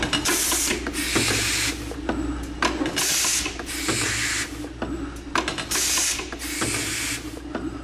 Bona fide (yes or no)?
yes